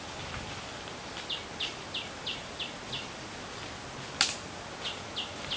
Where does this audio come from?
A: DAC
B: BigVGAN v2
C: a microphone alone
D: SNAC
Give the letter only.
C